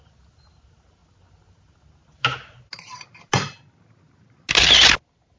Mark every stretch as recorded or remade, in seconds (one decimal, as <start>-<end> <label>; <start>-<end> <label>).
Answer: 0.0-5.4 recorded